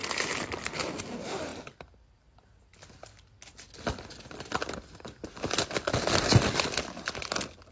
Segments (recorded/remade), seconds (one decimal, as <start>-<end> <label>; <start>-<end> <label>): 0.0-7.7 recorded